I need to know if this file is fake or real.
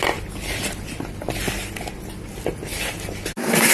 real